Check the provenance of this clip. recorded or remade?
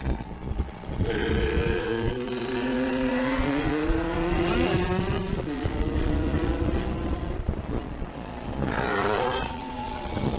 remade